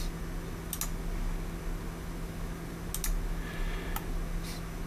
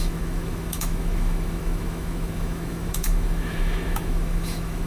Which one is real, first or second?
first